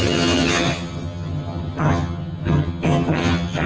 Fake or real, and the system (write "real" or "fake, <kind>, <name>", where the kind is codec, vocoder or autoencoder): fake, vocoder, HiFi-GAN